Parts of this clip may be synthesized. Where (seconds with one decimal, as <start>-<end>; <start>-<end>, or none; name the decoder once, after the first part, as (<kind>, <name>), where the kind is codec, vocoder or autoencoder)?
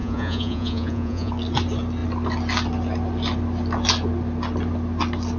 0.0-1.3 (vocoder, Vocos)